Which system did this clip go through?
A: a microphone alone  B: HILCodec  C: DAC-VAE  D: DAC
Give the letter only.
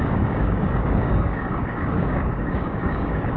D